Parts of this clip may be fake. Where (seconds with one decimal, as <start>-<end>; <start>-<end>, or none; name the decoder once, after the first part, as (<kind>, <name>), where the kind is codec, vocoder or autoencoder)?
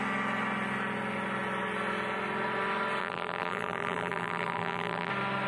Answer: 3.0-5.1 (vocoder, BigVGAN v2)